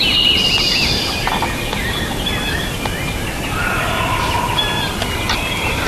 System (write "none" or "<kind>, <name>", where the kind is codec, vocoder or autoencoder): none